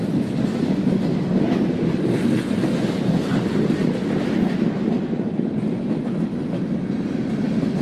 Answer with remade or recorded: recorded